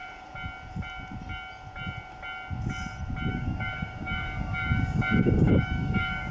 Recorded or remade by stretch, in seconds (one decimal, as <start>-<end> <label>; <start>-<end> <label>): 0.0-3.3 recorded; 3.3-6.3 remade